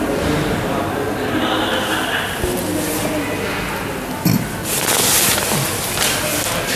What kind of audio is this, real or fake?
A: real